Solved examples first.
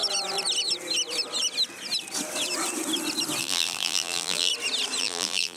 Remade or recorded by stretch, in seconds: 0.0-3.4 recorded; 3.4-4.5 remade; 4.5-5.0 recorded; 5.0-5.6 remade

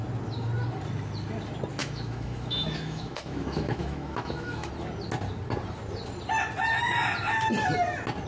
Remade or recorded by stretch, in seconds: 0.0-1.8 recorded; 1.8-4.7 remade; 4.7-8.3 recorded

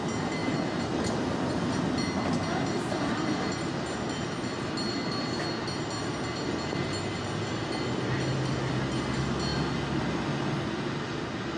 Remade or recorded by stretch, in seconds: 0.0-11.6 recorded

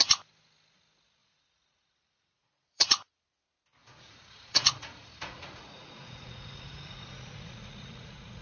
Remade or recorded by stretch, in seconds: 0.0-1.2 recorded; 1.2-3.2 remade; 3.2-3.8 recorded; 3.8-8.4 remade

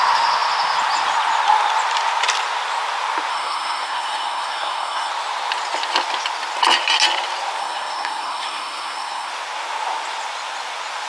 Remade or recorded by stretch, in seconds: 0.0-3.3 recorded; 3.3-5.1 remade; 5.1-7.6 recorded; 7.6-9.3 remade; 9.3-11.1 recorded

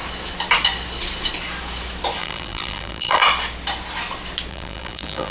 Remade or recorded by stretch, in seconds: 0.0-2.2 recorded; 2.2-3.2 remade; 3.2-4.5 recorded; 4.5-5.3 remade

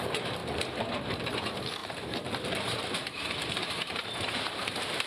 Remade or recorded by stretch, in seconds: 0.0-5.1 remade